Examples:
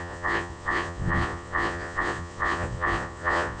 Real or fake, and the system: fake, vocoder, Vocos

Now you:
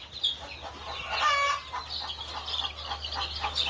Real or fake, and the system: real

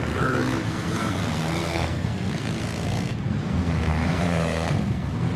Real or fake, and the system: fake, codec, SNAC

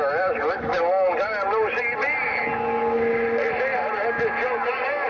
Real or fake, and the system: real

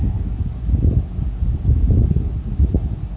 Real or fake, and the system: real